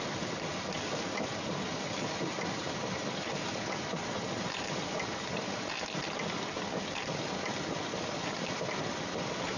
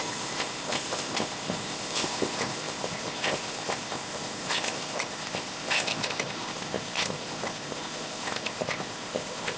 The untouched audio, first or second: first